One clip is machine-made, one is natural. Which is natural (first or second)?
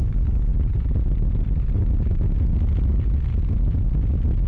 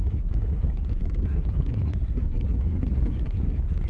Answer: first